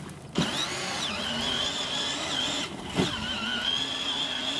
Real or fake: real